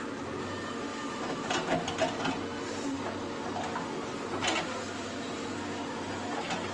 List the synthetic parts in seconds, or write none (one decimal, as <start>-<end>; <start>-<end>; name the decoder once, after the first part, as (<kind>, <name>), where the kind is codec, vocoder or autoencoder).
none